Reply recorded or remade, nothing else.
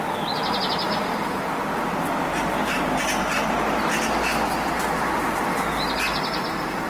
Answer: recorded